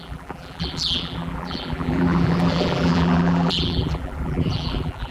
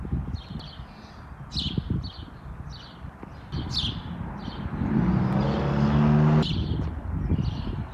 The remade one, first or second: first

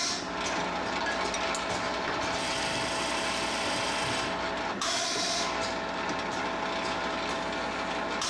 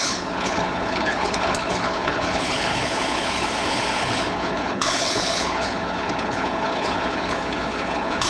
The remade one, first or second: second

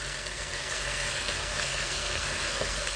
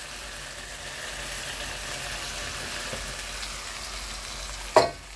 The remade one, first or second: first